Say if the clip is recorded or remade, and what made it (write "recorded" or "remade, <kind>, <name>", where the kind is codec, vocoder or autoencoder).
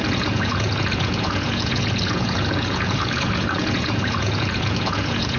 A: remade, vocoder, Vocos